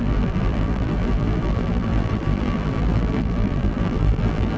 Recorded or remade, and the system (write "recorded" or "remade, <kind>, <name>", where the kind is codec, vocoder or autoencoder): remade, vocoder, BigVGAN v2